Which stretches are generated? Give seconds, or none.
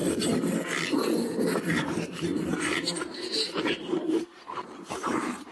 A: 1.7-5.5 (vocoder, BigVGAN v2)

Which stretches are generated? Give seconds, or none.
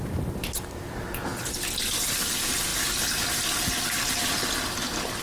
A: none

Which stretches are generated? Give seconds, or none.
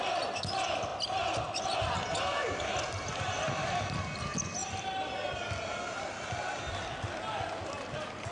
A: none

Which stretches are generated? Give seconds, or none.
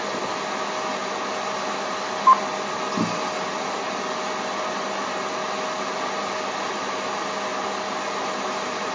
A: none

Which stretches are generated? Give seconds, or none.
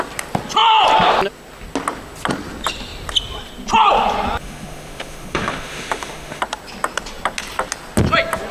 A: 4.4-6.4 (autoencoder, DAC-VAE)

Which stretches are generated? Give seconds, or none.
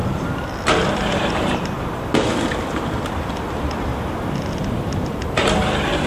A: 0.0-3.9 (vocoder, BigVGAN v2); 4.5-6.1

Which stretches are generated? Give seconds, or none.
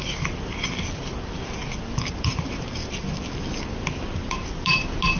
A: none